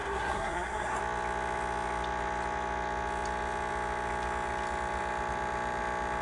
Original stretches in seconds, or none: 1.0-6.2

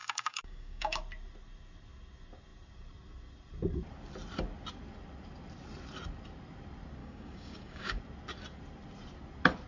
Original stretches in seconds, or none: 1.0-7.0; 8.0-9.7

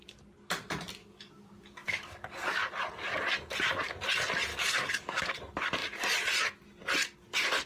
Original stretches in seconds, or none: 0.0-1.0; 2.7-4.5; 5.3-7.7

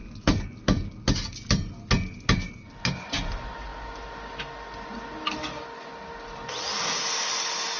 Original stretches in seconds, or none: 0.0-7.8